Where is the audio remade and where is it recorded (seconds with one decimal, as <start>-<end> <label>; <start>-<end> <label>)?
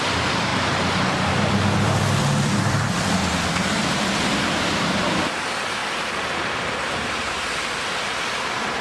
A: 0.0-0.5 remade; 0.5-1.3 recorded; 1.3-5.8 remade; 5.8-6.4 recorded; 6.4-8.8 remade